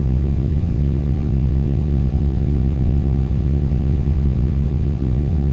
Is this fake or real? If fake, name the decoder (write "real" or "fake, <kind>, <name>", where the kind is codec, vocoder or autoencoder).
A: fake, vocoder, WaveNeXt